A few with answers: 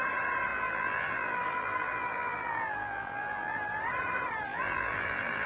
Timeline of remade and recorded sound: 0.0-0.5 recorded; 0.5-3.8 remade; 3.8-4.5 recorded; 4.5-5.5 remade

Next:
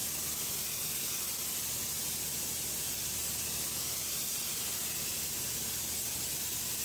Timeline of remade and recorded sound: 0.0-6.8 recorded

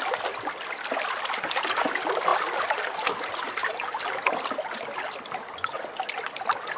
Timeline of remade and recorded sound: 0.0-6.8 recorded

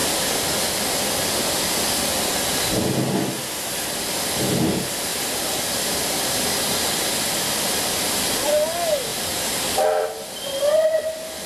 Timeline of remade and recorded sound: 0.0-2.1 remade; 2.1-5.1 recorded; 5.1-7.7 remade; 7.7-9.1 recorded; 9.1-11.0 remade; 11.0-11.5 recorded